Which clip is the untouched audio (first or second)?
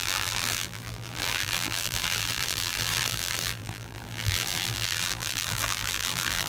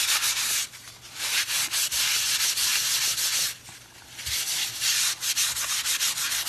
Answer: second